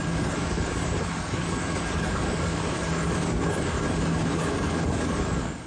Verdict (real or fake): fake